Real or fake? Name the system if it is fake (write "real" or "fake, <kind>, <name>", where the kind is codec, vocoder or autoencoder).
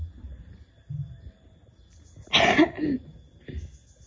real